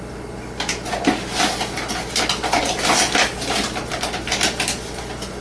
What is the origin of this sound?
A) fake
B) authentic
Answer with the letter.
B